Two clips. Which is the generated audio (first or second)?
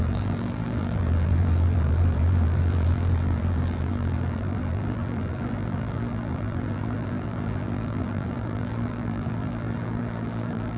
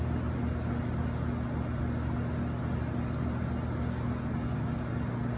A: first